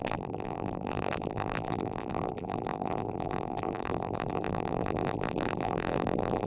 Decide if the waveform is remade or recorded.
remade